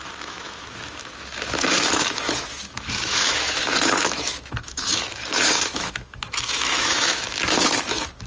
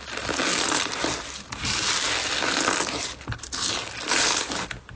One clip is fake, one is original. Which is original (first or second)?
second